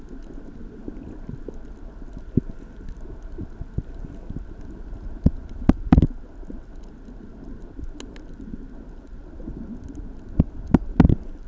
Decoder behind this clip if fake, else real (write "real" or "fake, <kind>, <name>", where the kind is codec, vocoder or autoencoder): real